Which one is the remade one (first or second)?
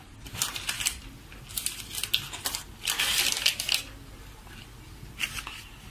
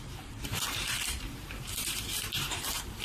second